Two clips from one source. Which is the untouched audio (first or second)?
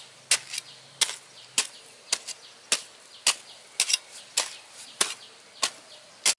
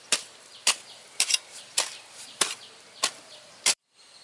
first